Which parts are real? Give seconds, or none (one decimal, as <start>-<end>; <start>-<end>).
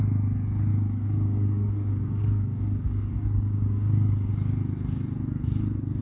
0.0-0.7; 4.3-6.0